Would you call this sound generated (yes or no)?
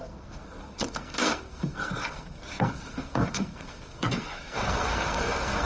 yes